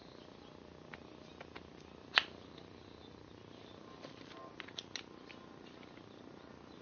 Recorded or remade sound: recorded